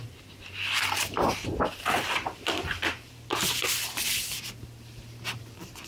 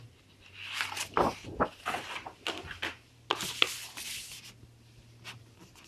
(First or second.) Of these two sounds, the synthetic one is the first